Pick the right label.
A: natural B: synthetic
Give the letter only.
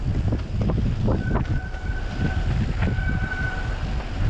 A